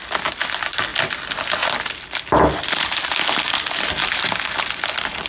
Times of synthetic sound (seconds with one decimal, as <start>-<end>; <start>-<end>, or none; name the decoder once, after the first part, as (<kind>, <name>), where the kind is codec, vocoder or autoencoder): none